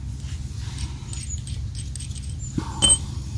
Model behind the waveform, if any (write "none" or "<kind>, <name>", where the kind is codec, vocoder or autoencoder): none